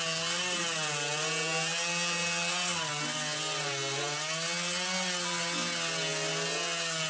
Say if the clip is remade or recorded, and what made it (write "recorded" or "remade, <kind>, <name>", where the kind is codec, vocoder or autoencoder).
recorded